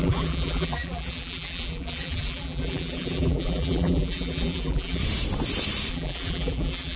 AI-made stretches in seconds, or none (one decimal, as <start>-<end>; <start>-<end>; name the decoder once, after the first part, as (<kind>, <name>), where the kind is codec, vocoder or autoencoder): 0.0-5.0 (vocoder, BigVGAN v2); 5.9-7.0